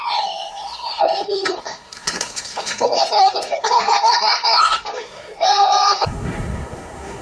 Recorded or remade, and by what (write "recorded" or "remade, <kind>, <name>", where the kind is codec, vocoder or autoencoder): remade, codec, SNAC